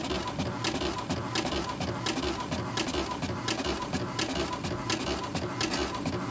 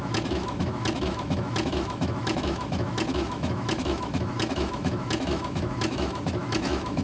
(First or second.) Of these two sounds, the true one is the first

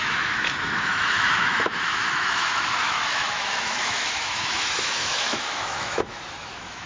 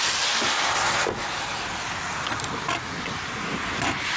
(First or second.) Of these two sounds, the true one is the second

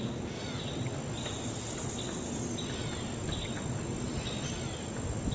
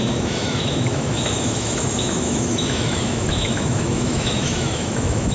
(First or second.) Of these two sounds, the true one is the first